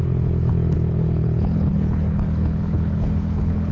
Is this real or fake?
fake